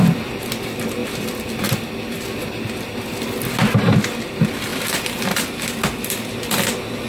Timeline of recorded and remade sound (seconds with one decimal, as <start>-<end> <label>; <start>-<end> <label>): 0.0-7.1 recorded